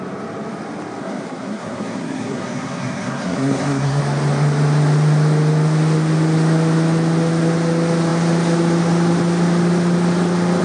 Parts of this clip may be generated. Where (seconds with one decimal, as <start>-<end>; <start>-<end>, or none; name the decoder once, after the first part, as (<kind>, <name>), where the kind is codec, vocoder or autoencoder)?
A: 1.0-4.0 (codec, SNAC)